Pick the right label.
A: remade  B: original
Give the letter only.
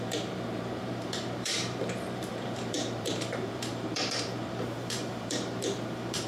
A